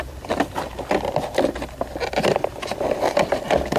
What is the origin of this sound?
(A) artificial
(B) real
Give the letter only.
B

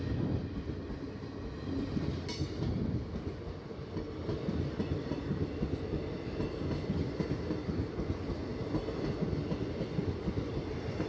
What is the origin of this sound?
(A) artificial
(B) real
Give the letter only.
B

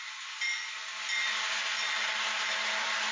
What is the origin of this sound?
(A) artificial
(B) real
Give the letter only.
B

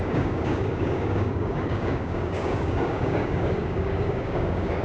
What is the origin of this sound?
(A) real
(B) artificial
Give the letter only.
B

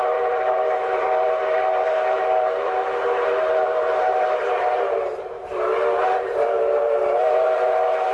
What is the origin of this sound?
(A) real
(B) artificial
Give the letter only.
B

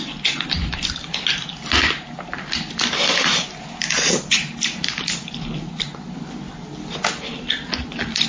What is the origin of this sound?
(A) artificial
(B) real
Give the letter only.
B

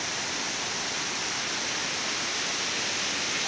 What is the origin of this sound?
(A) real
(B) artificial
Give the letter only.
A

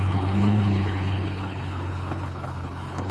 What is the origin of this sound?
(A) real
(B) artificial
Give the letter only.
B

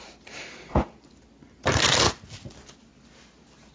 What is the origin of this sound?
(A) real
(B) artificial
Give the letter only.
A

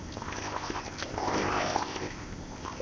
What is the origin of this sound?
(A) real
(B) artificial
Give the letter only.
B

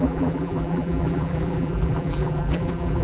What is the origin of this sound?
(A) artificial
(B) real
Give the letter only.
A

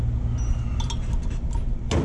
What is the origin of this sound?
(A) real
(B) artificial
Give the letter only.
A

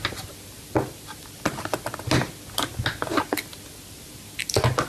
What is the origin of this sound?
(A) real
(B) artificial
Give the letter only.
A